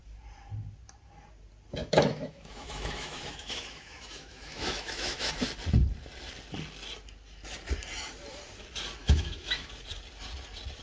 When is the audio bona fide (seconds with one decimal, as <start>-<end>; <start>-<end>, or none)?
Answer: 0.0-1.8; 5.3-9.0; 9.7-10.8